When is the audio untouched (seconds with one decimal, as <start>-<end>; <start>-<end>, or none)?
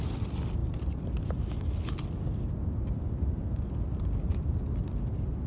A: 0.0-5.5